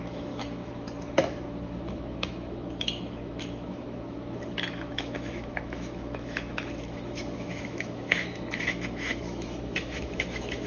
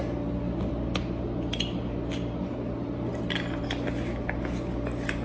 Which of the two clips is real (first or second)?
second